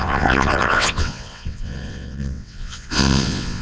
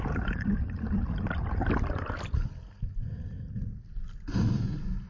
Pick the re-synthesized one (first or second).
first